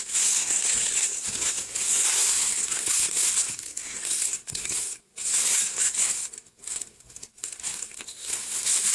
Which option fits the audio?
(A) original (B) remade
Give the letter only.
B